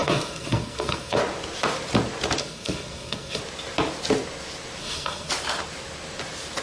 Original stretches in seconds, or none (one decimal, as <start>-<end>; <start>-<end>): 1.2-2.4; 3.4-4.8; 5.3-6.6